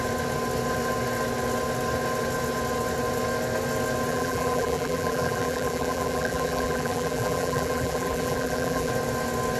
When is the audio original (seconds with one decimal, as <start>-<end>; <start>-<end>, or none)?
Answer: 0.0-4.1; 8.9-9.6